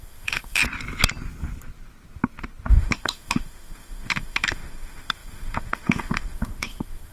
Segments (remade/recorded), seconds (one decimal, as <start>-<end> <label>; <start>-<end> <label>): 0.0-0.6 remade; 0.6-2.7 recorded; 2.7-7.1 remade